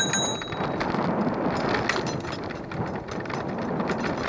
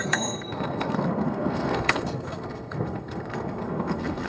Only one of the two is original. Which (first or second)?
first